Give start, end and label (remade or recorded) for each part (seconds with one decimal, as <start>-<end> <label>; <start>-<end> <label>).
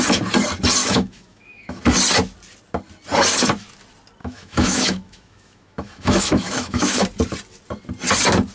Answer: 0.0-0.8 recorded; 0.8-1.8 remade; 1.8-4.2 recorded; 4.2-7.0 remade; 7.0-8.5 recorded